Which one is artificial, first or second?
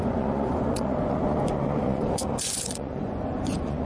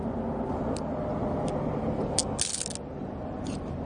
first